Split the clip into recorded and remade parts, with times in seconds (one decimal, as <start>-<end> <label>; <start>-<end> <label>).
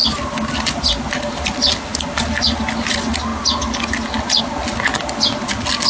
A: 0.0-5.9 recorded